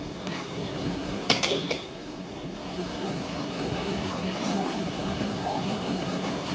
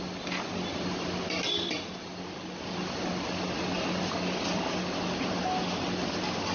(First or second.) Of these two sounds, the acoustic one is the second